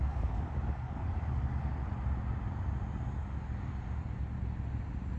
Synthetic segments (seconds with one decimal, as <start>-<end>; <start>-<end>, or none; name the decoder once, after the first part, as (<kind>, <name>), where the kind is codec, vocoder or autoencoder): 0.0-1.7 (codec, DAC)